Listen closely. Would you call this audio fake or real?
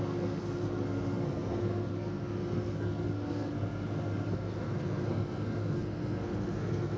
fake